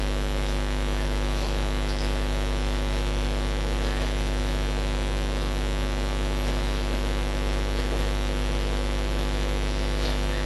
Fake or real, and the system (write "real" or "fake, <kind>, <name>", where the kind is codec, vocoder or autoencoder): fake, autoencoder, DAC-VAE